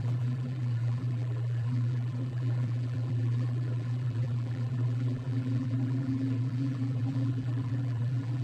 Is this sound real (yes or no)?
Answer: no